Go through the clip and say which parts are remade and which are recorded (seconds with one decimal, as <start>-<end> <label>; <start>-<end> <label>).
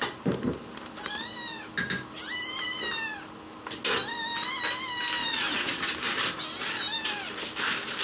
0.0-5.2 recorded; 5.2-5.9 remade; 5.9-8.0 recorded